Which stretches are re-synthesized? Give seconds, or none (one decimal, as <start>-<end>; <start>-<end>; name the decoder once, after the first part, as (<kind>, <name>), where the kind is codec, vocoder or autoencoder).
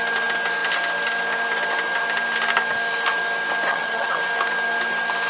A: 3.7-4.2 (vocoder, HiFi-GAN)